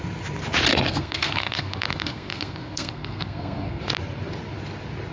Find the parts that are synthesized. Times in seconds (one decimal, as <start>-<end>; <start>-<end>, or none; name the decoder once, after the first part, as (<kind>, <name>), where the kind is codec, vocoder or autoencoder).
0.7-3.8 (codec, SNAC)